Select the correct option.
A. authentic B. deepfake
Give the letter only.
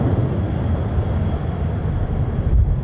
A